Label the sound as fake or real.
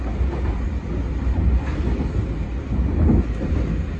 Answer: real